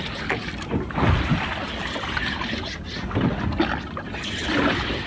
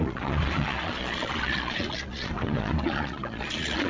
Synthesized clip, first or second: second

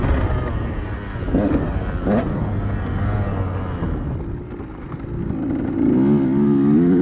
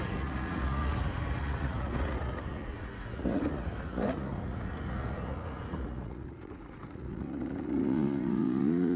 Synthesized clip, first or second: second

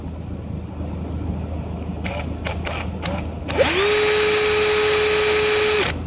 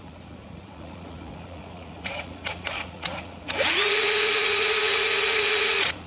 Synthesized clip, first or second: second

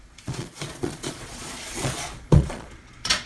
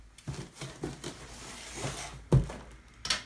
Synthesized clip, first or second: first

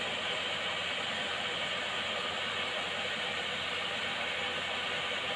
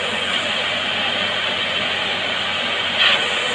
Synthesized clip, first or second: second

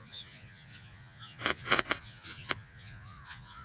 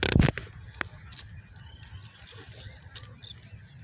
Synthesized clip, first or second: first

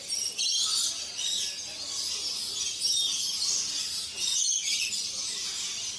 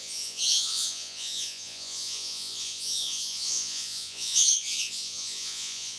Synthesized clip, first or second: second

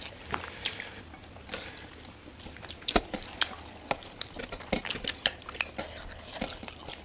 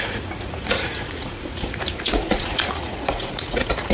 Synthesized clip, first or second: second